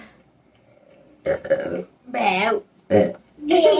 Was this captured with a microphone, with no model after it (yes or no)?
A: yes